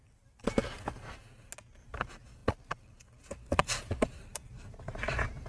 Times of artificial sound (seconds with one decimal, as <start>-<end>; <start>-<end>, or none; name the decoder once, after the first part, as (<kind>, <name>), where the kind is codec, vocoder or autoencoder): 0.0-0.6 (vocoder, BigVGAN v2); 1.8-2.4; 3.5-5.5